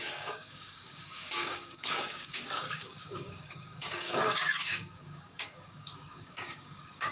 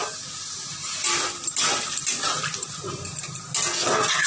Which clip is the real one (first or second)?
second